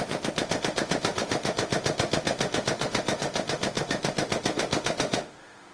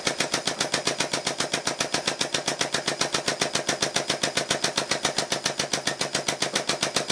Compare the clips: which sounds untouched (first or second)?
second